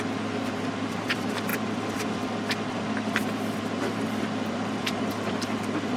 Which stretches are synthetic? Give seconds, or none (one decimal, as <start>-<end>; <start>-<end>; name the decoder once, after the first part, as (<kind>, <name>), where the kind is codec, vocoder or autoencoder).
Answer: none

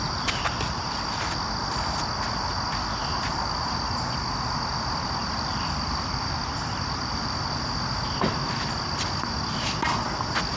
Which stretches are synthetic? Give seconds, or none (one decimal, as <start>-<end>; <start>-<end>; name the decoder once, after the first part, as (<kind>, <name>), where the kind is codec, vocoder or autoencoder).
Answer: 5.2-7.4 (vocoder, BigVGAN v2)

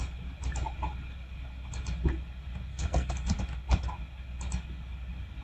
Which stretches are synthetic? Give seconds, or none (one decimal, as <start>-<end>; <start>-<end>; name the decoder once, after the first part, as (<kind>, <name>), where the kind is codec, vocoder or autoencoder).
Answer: 2.7-3.4 (codec, SNAC)

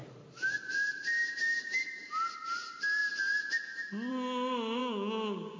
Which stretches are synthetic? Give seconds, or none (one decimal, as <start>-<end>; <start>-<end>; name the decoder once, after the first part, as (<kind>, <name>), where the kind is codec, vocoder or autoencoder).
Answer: 4.8-5.6 (codec, DAC)

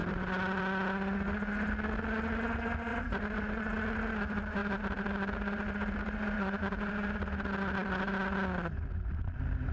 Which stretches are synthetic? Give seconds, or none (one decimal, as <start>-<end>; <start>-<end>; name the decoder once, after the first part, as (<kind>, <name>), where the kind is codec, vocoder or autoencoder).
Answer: 0.0-0.6 (vocoder, BigVGAN v2); 2.9-3.6; 4.6-7.4